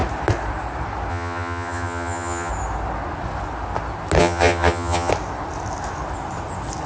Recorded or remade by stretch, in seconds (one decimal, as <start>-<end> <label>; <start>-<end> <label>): 0.0-1.1 recorded; 1.1-2.5 remade; 2.5-4.2 recorded; 4.2-5.1 remade; 5.1-6.9 recorded